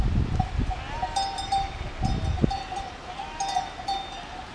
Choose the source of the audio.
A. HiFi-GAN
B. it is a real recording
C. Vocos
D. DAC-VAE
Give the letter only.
B